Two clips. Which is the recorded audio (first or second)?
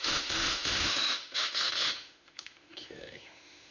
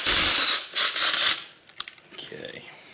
second